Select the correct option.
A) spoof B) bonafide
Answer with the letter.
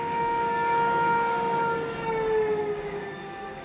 A